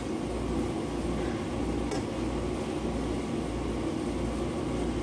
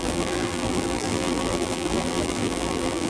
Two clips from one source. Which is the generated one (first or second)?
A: second